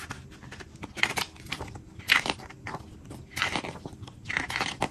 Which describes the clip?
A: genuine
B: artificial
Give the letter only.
B